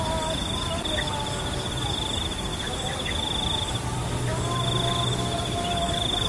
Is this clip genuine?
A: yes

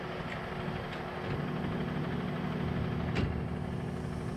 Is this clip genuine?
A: yes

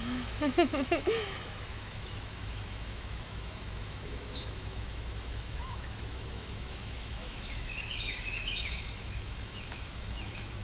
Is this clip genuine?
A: no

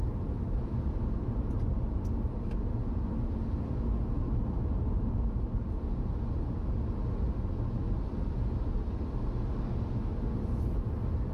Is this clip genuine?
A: yes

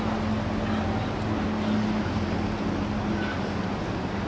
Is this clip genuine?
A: yes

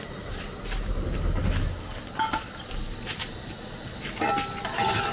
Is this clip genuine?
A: yes